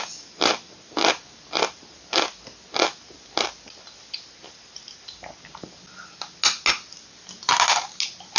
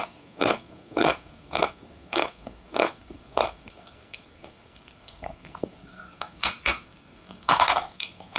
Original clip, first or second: first